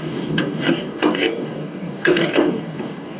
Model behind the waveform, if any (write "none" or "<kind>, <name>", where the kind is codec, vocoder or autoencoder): codec, DAC